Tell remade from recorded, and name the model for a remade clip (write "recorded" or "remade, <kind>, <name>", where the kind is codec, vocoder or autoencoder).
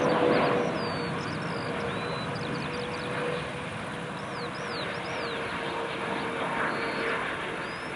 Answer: recorded